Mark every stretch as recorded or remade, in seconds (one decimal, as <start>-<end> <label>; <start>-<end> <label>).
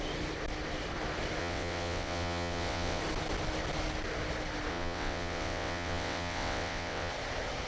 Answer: 0.0-1.4 recorded; 1.4-3.0 remade; 3.0-4.7 recorded; 4.7-7.1 remade; 7.1-7.7 recorded